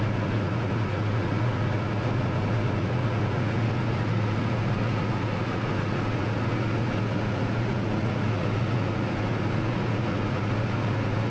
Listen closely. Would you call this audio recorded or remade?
remade